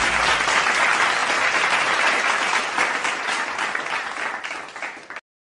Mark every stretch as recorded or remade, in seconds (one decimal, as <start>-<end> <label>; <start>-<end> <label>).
0.0-5.4 recorded